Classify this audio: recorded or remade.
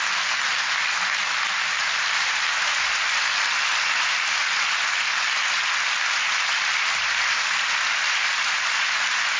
recorded